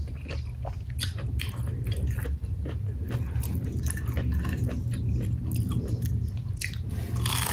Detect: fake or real real